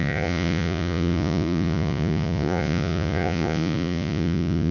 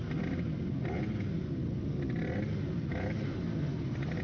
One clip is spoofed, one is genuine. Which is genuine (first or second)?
second